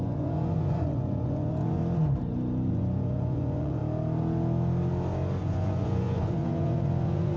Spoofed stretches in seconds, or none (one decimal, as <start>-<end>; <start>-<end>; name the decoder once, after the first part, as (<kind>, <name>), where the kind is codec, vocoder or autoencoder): 0.0-1.8 (vocoder, Vocos); 2.7-3.8; 5.4-7.4